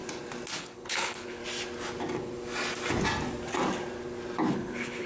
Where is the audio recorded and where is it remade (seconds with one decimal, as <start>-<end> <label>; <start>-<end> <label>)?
0.0-0.6 recorded; 0.6-1.4 remade; 1.4-4.5 recorded; 4.5-5.1 remade